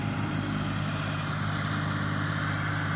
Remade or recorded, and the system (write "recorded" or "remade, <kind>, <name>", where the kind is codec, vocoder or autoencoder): recorded